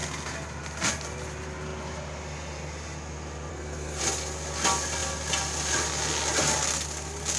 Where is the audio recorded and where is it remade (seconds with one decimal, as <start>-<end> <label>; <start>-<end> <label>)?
0.0-3.5 recorded; 3.5-4.0 remade; 4.0-7.4 recorded